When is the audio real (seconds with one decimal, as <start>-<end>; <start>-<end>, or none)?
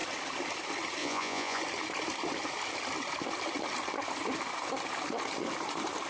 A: 0.0-1.0; 1.6-6.1